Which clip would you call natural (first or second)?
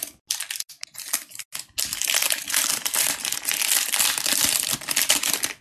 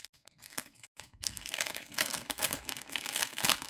first